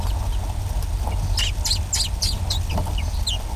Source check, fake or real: real